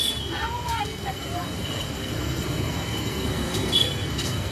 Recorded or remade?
remade